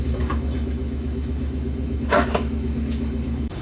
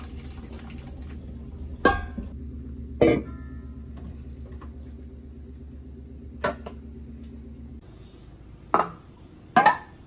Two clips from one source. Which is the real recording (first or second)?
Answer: second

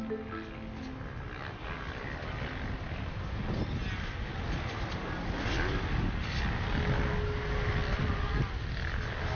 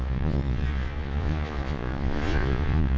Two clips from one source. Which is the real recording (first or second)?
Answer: first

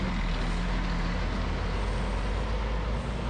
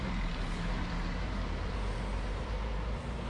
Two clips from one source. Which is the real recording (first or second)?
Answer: first